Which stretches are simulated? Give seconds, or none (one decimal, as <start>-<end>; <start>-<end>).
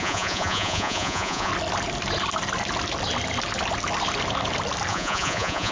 0.0-1.5; 4.9-5.7